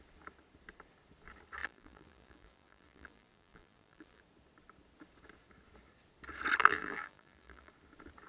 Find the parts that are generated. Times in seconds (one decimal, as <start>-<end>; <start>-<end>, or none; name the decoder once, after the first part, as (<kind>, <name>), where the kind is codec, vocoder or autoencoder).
1.6-4.2 (vocoder, BigVGAN v2); 6.6-7.7

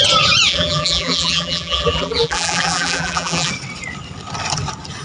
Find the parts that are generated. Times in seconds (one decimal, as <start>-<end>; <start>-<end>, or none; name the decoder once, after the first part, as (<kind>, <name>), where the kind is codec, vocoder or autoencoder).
0.5-3.5 (vocoder, BigVGAN v2)

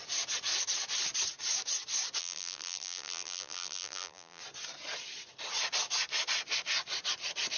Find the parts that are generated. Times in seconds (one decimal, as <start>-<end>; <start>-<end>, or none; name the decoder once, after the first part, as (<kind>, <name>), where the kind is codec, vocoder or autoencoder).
2.2-4.4 (vocoder, BigVGAN v2)

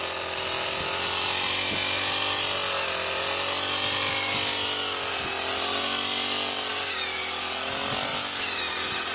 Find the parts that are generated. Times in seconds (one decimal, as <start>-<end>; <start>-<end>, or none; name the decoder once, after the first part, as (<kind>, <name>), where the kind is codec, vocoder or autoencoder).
6.7-7.4 (vocoder, BigVGAN v2); 8.1-8.6

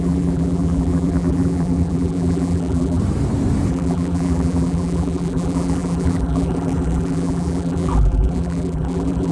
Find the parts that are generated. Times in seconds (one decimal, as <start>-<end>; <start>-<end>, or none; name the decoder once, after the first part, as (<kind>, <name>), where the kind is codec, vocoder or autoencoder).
0.0-3.0 (vocoder, BigVGAN v2); 3.7-9.3

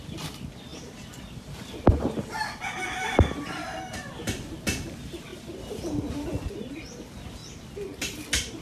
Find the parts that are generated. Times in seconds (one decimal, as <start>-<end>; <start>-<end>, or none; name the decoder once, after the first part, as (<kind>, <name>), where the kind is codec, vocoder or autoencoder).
0.7-4.3 (vocoder, BigVGAN v2); 5.3-6.7